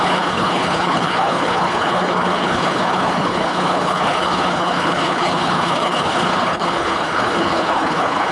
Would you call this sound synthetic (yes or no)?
yes